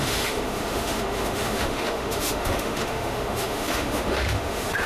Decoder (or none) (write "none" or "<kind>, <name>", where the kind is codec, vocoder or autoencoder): autoencoder, DAC-VAE